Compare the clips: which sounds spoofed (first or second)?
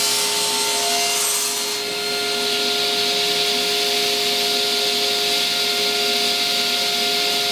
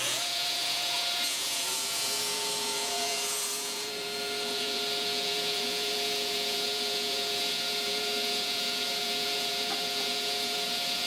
second